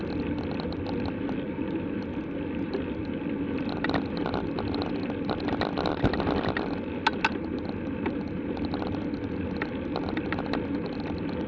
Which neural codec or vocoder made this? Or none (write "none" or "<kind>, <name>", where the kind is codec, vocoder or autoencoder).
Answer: none